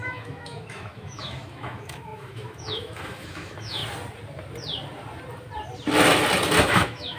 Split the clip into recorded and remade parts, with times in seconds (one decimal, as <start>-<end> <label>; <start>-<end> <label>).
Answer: 0.0-3.8 remade; 3.8-6.6 recorded; 6.6-7.2 remade